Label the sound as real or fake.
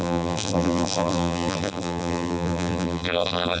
fake